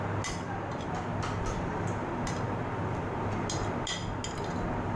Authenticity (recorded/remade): recorded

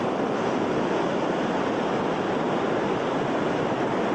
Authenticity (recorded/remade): recorded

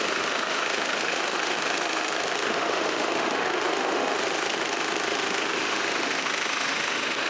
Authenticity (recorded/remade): remade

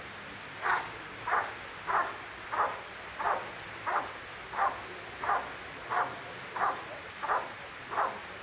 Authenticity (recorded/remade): recorded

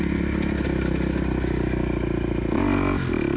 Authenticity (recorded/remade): recorded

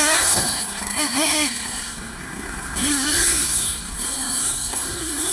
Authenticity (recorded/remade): remade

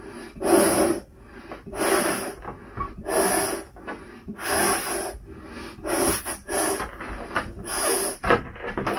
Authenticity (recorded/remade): recorded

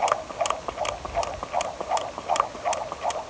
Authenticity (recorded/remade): recorded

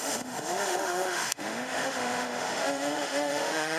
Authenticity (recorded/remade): remade